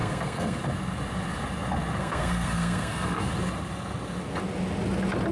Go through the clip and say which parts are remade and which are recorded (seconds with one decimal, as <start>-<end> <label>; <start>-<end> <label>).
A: 0.0-0.6 remade; 0.6-2.0 recorded; 2.0-3.3 remade; 3.3-5.3 recorded

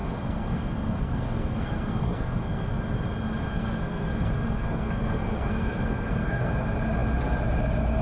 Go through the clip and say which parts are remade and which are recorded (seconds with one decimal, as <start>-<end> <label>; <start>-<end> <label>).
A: 0.0-2.8 remade; 2.8-3.5 recorded; 3.5-6.5 remade; 6.5-8.0 recorded

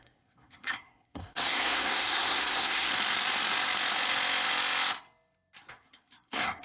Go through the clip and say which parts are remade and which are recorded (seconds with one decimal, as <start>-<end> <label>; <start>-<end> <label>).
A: 0.0-2.9 remade; 2.9-5.7 recorded; 5.7-6.6 remade

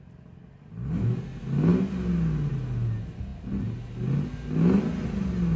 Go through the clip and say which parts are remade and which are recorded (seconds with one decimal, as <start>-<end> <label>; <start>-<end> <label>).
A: 0.0-5.6 recorded

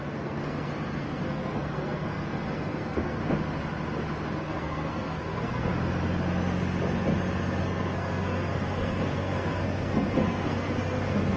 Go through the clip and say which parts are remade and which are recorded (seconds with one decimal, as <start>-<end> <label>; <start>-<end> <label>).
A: 0.0-3.2 remade; 3.2-4.4 recorded; 4.4-5.7 remade; 5.7-7.6 recorded; 7.6-11.4 remade